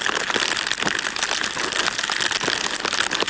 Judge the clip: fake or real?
real